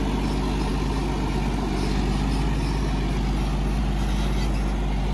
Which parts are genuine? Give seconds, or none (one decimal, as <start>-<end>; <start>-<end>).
0.0-5.1